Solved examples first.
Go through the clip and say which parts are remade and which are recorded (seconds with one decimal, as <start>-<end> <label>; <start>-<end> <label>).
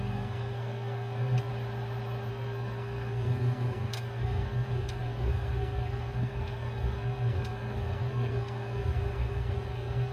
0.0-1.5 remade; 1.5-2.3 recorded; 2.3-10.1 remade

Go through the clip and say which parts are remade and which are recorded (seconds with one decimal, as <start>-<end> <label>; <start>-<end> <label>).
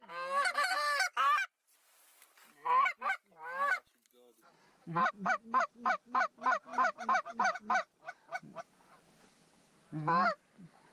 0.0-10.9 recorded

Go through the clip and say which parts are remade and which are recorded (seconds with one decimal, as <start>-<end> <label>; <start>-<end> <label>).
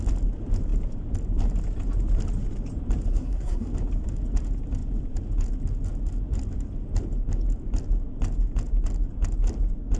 0.0-3.1 recorded; 3.1-3.7 remade; 3.7-10.0 recorded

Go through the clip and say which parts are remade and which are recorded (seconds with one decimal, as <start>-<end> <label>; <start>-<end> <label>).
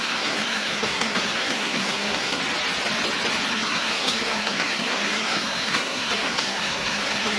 0.0-2.4 remade; 2.4-3.5 recorded; 3.5-7.4 remade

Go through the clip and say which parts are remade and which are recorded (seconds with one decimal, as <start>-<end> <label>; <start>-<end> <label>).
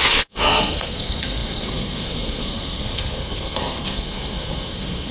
0.0-5.1 remade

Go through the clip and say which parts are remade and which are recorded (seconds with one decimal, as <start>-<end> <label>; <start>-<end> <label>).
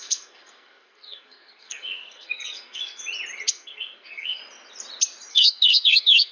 0.0-3.0 remade; 3.0-3.5 recorded; 3.5-4.4 remade; 4.4-5.3 recorded; 5.3-6.3 remade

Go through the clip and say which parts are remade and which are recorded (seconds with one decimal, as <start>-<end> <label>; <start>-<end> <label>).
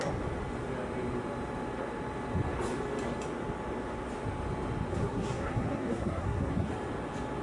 0.0-4.9 recorded; 4.9-6.7 remade; 6.7-7.4 recorded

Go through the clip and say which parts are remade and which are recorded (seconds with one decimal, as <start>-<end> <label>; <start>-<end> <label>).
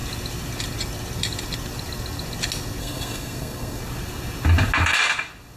0.0-2.8 recorded; 2.8-3.8 remade; 3.8-5.6 recorded